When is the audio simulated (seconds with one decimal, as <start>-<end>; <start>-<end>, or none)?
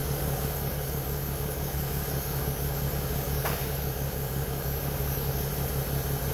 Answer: 0.0-5.5